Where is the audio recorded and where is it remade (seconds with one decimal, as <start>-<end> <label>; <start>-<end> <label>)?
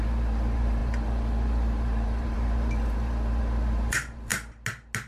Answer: 0.0-4.3 remade; 4.3-5.1 recorded